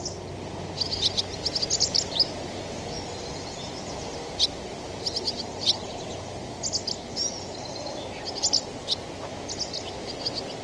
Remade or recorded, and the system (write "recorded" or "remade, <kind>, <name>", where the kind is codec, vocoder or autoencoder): recorded